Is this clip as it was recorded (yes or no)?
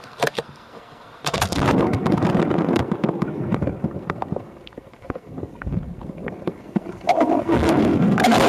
no